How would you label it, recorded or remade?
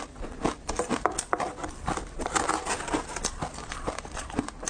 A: recorded